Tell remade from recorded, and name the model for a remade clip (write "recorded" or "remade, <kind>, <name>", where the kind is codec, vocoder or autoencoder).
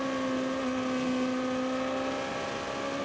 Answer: recorded